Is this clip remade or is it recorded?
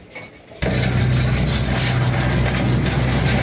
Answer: recorded